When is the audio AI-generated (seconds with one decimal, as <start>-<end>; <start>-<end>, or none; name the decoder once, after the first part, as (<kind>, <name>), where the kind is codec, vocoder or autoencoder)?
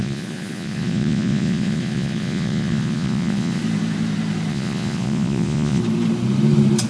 0.0-3.6 (vocoder, Vocos); 4.5-5.8